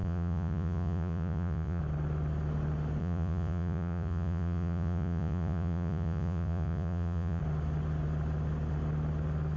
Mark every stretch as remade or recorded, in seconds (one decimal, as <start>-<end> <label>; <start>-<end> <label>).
0.0-1.8 remade; 1.8-3.0 recorded; 3.0-7.4 remade; 7.4-9.6 recorded